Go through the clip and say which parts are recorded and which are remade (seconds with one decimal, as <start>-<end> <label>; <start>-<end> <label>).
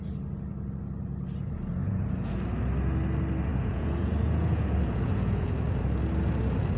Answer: 0.0-1.8 recorded; 1.8-2.5 remade; 2.5-3.5 recorded; 3.5-5.9 remade; 5.9-6.8 recorded